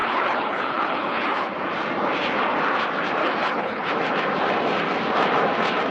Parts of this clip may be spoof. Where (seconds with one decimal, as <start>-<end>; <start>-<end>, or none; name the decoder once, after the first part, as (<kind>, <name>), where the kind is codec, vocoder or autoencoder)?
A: 0.0-1.5 (codec, HILCodec); 3.2-3.9